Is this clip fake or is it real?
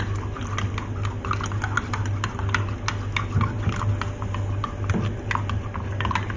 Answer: real